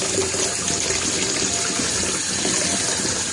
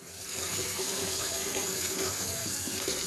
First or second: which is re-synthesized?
second